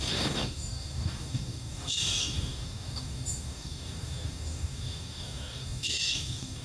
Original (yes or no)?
no